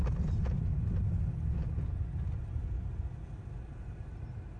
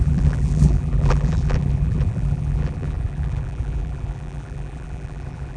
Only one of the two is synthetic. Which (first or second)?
second